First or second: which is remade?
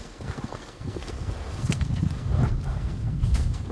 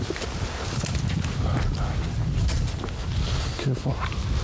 first